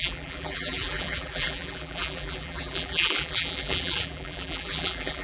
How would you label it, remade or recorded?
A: remade